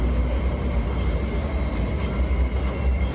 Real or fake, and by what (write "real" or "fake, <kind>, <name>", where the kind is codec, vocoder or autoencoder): real